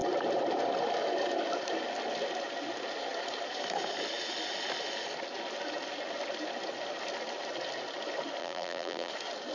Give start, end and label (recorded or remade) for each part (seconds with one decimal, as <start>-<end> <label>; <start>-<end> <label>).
0.0-8.4 recorded; 8.4-9.1 remade; 9.1-9.5 recorded

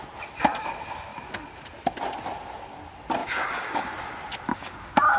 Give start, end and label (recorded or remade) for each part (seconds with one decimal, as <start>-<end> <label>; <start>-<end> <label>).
0.0-3.2 recorded; 3.2-4.0 remade; 4.0-4.5 recorded; 4.5-5.2 remade

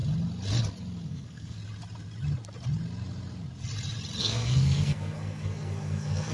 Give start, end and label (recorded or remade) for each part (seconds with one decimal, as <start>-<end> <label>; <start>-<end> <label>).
0.0-1.1 recorded; 1.1-1.6 remade; 1.6-4.2 recorded; 4.2-6.3 remade

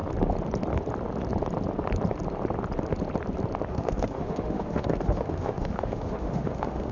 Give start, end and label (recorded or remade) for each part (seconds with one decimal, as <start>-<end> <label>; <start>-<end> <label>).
0.0-3.7 recorded; 3.7-6.9 remade

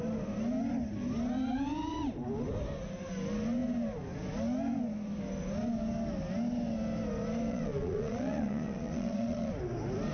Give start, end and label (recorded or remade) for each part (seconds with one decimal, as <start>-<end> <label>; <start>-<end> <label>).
0.0-7.5 recorded; 7.5-9.5 remade; 9.5-10.1 recorded

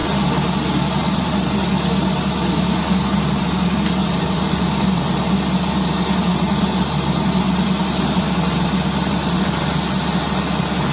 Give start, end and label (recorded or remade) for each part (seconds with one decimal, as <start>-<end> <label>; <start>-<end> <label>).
0.0-4.0 recorded; 4.0-5.3 remade; 5.3-10.9 recorded

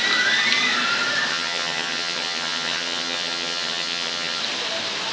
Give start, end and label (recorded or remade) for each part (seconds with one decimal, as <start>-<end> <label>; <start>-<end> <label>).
0.0-1.3 recorded; 1.3-4.4 remade; 4.4-5.1 recorded

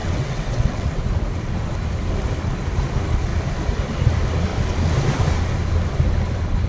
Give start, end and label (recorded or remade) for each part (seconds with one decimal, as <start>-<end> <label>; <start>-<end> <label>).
0.0-1.0 remade; 1.0-6.7 recorded